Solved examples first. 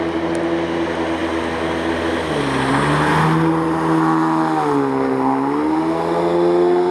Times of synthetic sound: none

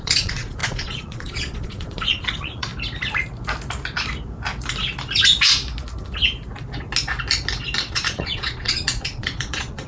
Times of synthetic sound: 0.0-2.7; 7.9-9.9